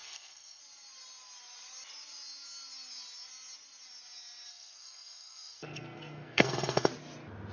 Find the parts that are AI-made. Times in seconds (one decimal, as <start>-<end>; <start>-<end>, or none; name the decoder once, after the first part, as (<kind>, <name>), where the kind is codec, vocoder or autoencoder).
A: 0.0-0.6 (codec, SNAC); 4.5-6.9